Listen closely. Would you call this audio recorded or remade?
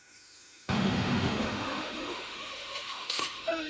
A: remade